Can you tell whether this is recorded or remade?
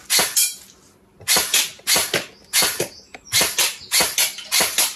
recorded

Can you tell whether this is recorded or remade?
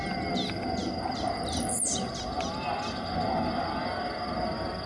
recorded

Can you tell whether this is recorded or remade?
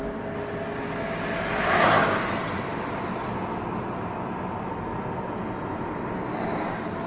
recorded